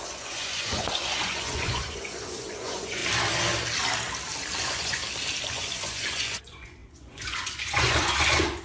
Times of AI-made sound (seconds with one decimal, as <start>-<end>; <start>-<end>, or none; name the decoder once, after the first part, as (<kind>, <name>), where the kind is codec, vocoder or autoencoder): 0.0-3.0 (vocoder, Vocos); 4.6-5.0; 5.5-8.6